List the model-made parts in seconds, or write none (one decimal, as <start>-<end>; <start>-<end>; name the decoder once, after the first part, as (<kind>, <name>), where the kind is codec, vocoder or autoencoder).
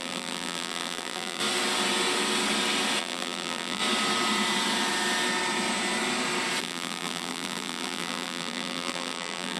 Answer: 0.0-1.4 (vocoder, BigVGAN v2); 3.0-3.8; 6.6-9.6